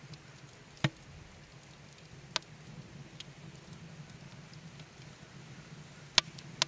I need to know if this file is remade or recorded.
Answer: recorded